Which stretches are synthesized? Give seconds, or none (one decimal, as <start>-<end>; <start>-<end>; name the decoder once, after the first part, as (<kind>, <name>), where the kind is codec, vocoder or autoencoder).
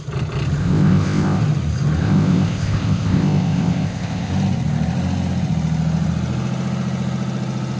0.6-1.4 (codec, ZipCodec); 2.0-4.3